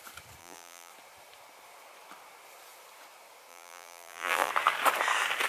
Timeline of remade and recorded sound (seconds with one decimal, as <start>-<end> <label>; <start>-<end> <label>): 0.0-0.4 recorded; 0.4-0.9 remade; 0.9-3.5 recorded; 3.5-4.5 remade; 4.5-5.5 recorded